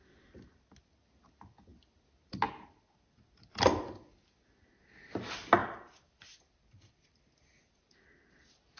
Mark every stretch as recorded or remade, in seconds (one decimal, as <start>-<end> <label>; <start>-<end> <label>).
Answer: 0.0-8.8 recorded